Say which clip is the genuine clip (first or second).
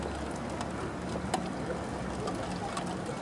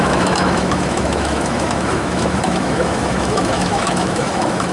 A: first